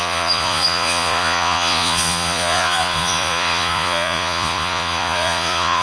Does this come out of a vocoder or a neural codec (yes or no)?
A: yes